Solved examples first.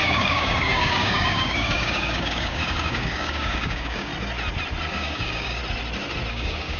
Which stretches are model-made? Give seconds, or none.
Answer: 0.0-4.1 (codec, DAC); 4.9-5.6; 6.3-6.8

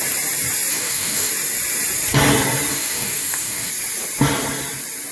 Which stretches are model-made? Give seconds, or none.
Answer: 0.7-1.3 (codec, DAC); 2.7-3.7